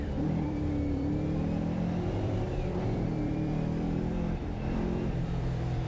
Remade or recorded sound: remade